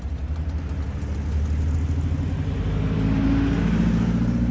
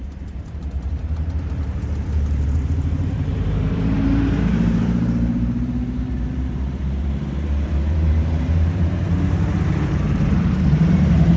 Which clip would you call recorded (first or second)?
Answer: first